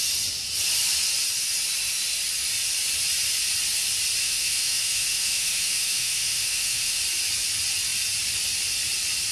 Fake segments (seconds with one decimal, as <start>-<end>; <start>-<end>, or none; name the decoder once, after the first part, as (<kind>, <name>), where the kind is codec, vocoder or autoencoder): 4.2-7.0 (autoencoder, DAC-VAE)